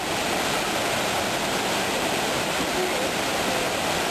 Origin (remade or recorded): recorded